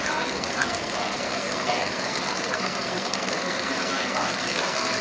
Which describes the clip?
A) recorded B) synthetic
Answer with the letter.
B